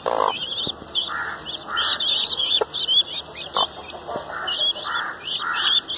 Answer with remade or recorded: recorded